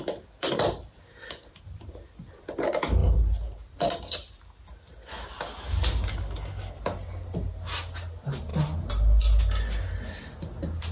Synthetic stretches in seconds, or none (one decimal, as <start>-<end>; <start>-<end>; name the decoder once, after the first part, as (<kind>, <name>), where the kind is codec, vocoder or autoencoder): none